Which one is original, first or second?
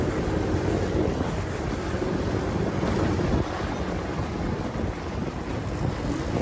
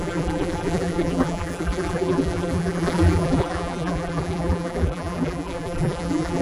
first